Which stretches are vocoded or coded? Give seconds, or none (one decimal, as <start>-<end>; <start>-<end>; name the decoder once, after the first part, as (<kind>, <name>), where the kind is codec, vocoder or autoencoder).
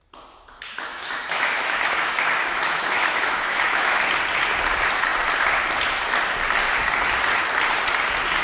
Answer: 0.9-4.0 (autoencoder, DAC-VAE)